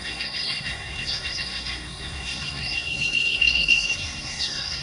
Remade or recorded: remade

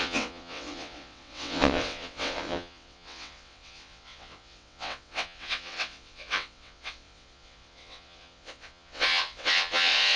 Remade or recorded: remade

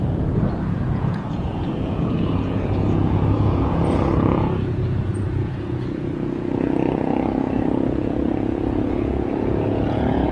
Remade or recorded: remade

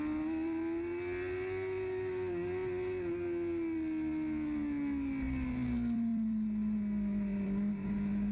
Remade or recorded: recorded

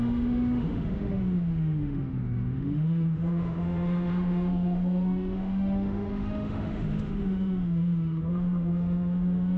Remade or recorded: remade